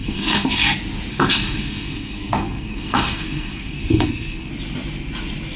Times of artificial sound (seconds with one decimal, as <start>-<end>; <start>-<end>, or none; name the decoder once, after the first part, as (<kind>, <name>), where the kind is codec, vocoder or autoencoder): 0.0-0.7 (codec, SNAC); 1.1-4.5